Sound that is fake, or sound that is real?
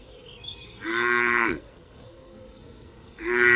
fake